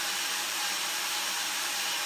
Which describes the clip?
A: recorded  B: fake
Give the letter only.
B